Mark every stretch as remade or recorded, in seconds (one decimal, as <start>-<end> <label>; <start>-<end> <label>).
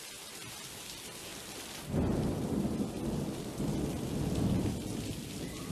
0.0-5.7 recorded